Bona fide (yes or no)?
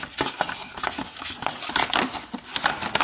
yes